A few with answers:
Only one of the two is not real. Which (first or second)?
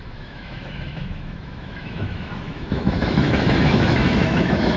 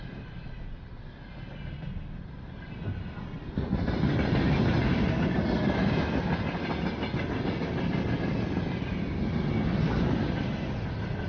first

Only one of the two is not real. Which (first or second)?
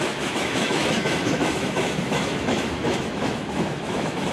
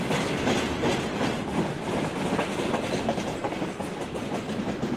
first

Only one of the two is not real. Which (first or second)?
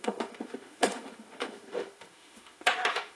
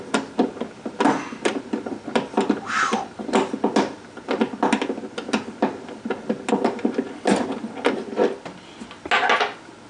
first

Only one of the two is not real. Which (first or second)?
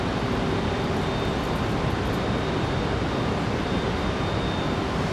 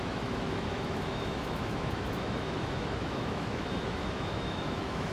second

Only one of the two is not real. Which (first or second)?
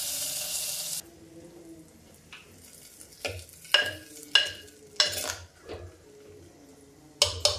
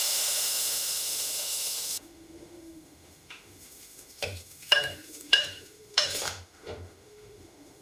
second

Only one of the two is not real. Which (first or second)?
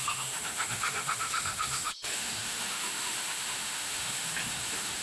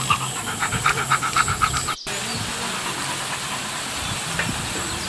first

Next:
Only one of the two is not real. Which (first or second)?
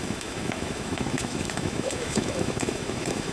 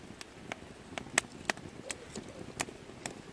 first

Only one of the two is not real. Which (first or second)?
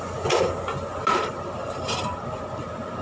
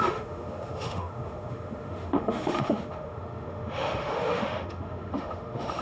second